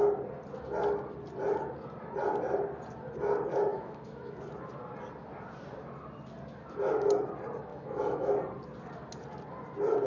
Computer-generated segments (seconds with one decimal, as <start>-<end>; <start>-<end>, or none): 3.7-4.4; 7.7-8.4